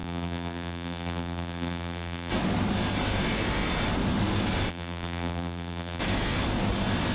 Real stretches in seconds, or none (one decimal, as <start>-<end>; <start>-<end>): 2.3-4.7; 6.0-7.1